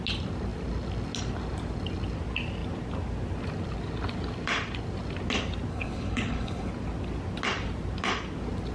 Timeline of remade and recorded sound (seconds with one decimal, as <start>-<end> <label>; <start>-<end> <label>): 0.0-5.7 recorded; 5.7-6.7 remade; 6.7-8.7 recorded